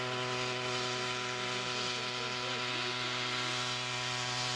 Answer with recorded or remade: recorded